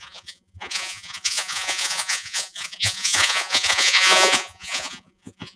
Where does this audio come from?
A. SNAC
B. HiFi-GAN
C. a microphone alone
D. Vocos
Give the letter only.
D